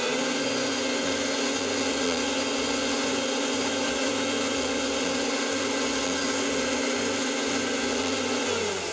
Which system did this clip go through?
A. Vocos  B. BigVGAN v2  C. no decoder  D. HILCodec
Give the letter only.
A